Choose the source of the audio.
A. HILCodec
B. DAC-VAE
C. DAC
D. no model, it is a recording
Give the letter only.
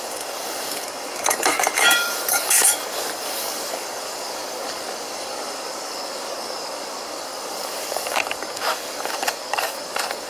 C